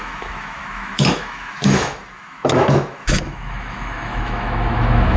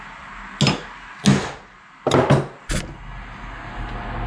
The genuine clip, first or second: second